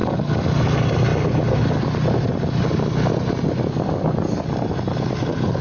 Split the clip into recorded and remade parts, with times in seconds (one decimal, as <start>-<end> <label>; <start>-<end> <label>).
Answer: 0.0-5.6 recorded